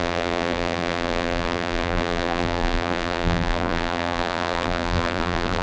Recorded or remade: remade